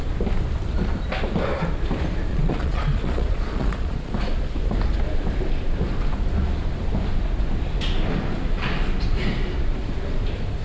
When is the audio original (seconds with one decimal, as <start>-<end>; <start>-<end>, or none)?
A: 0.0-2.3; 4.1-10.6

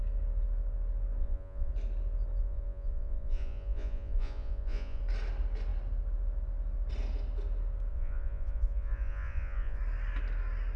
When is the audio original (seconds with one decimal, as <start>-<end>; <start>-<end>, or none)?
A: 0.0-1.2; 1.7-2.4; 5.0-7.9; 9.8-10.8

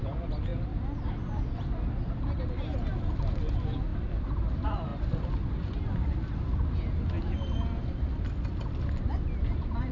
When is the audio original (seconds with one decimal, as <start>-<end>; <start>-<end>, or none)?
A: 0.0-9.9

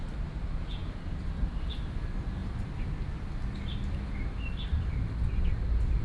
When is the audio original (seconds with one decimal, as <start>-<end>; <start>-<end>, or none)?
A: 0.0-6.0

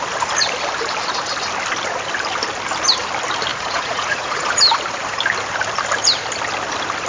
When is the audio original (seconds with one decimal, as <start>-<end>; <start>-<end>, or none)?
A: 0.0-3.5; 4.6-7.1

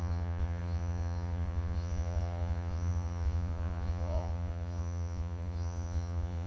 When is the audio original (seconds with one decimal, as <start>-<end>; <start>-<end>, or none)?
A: none

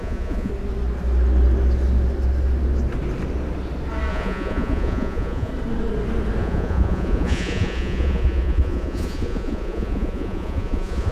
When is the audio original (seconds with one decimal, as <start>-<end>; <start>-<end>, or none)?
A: 0.5-4.1; 5.5-6.4

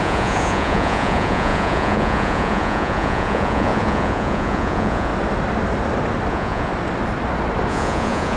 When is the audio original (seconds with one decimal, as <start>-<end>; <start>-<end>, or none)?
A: 5.1-6.3; 6.7-7.7